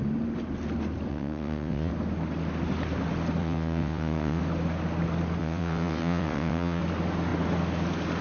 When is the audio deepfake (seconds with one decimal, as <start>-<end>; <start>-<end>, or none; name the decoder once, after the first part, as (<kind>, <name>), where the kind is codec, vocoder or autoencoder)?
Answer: 1.1-1.9 (vocoder, WaveNeXt); 3.4-4.4; 5.4-6.8